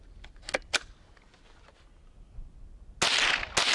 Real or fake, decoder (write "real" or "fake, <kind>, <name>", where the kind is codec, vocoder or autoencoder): real